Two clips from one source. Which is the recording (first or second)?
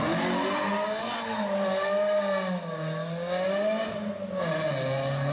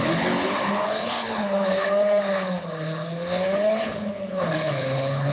first